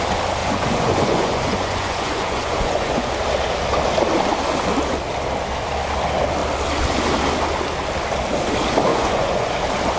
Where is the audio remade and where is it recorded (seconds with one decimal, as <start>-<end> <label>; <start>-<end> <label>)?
0.0-0.4 recorded; 0.4-3.1 remade; 3.1-8.9 recorded; 8.9-9.5 remade; 9.5-10.0 recorded